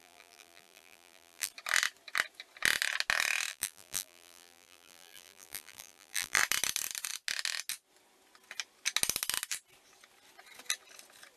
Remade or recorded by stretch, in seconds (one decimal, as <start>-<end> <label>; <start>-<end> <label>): 0.0-1.5 remade; 1.5-3.5 recorded; 3.5-6.4 remade; 6.4-11.4 recorded